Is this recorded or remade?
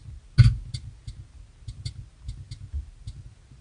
recorded